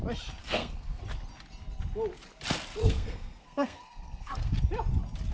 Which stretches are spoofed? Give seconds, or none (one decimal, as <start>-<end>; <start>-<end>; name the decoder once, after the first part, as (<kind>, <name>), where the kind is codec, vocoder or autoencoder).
0.4-1.0 (codec, SNAC); 2.8-4.5